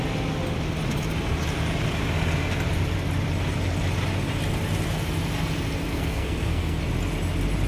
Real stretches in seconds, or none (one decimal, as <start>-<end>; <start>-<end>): 0.0-5.9; 6.8-7.7